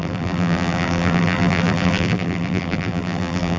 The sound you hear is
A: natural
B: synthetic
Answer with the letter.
B